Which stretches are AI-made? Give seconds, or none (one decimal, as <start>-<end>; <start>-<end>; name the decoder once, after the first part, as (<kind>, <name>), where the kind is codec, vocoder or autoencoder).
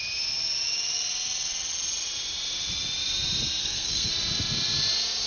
3.6-4.1 (codec, SNAC)